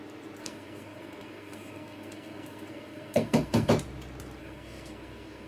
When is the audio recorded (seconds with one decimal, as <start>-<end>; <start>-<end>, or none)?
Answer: 0.0-0.4; 3.7-4.4